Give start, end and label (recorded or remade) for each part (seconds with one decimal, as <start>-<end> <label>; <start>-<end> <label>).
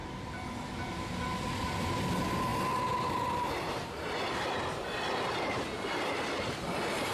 0.0-7.1 recorded